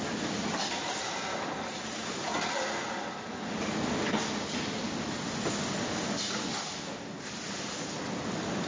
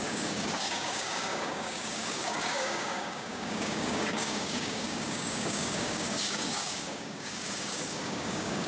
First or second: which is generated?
second